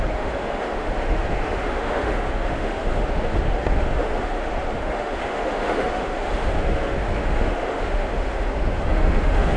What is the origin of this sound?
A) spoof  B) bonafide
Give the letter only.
A